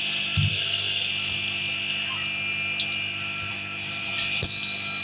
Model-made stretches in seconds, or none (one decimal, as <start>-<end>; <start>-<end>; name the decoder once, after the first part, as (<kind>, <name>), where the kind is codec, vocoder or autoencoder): 0.5-1.1 (codec, SNAC)